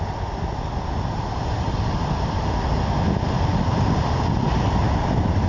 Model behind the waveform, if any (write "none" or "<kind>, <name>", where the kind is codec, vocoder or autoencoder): none